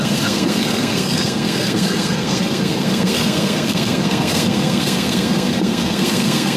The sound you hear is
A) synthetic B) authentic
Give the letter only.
A